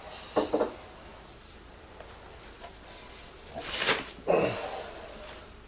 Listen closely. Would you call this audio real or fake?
real